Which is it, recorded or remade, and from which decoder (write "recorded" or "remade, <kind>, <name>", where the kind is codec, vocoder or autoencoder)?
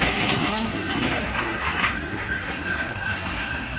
remade, codec, SNAC